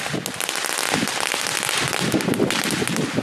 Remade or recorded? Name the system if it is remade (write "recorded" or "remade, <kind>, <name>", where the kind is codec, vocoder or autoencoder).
recorded